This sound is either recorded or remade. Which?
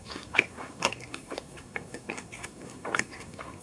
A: remade